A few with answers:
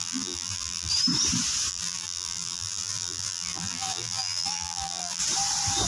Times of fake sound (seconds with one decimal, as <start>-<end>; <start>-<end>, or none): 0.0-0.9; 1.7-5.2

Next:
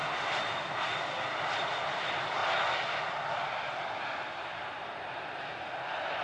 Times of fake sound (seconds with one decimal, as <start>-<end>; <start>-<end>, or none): none

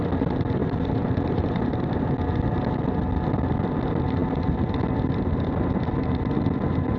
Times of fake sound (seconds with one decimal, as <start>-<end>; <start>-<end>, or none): 0.6-2.1

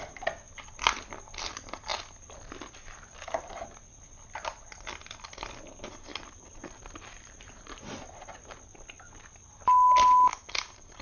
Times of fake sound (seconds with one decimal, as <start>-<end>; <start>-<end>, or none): 6.1-7.9; 10.3-11.0

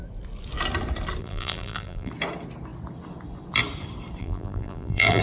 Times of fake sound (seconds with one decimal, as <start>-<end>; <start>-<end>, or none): 1.2-2.1; 4.2-5.2